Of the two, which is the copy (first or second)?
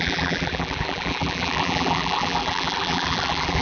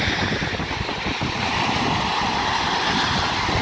first